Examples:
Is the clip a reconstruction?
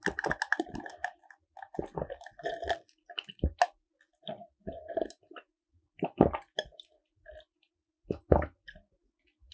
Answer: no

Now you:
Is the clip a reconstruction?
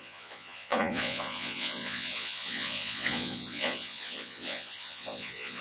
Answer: yes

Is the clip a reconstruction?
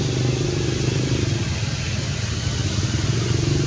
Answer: no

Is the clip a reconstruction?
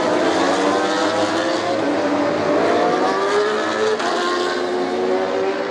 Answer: no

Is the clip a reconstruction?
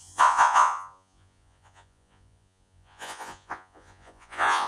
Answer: yes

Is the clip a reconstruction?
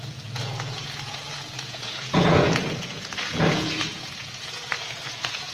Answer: yes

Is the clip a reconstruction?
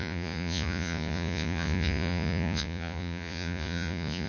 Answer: yes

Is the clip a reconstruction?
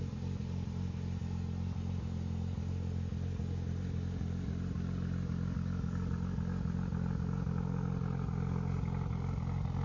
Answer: no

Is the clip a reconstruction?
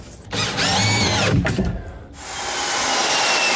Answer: no